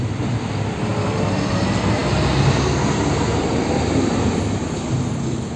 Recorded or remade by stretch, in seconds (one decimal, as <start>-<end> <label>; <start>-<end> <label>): 0.0-0.9 remade; 0.9-1.5 recorded; 1.5-2.0 remade; 2.0-3.4 recorded; 3.4-5.6 remade